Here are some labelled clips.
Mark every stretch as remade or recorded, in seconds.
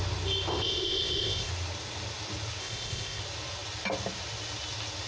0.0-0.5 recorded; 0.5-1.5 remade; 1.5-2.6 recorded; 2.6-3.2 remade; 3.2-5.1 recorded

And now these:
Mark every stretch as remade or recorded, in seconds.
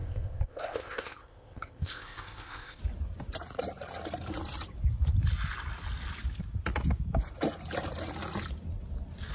0.0-2.8 remade; 2.8-9.3 recorded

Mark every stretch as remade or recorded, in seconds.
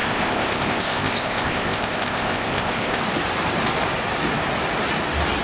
0.0-3.0 remade; 3.0-5.4 recorded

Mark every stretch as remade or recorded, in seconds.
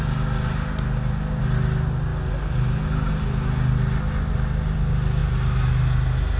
0.0-6.4 recorded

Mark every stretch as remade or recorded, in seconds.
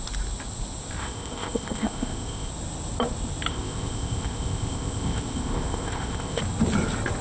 0.0-1.0 recorded; 1.0-2.5 remade; 2.5-3.5 recorded; 3.5-6.4 remade; 6.4-7.2 recorded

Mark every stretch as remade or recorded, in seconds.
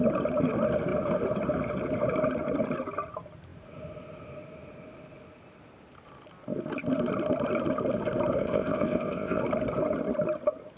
0.0-8.4 recorded; 8.4-9.4 remade; 9.4-10.8 recorded